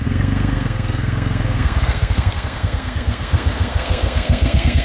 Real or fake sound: fake